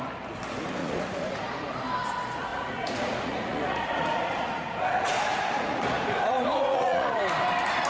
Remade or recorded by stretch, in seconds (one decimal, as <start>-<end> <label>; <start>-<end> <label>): 0.0-0.8 recorded; 0.8-1.7 remade; 1.7-2.5 recorded; 2.5-7.2 remade; 7.2-7.9 recorded